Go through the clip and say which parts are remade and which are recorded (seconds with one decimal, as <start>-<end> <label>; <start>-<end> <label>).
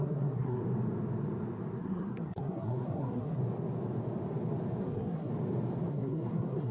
0.0-0.6 remade; 0.6-1.8 recorded; 1.8-3.4 remade; 3.4-4.8 recorded; 4.8-5.3 remade; 5.3-5.9 recorded; 5.9-6.7 remade